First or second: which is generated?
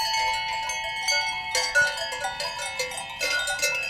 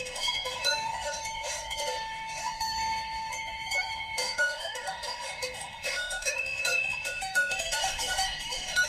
second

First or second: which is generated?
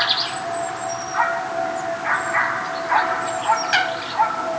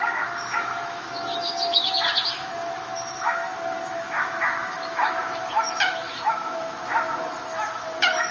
second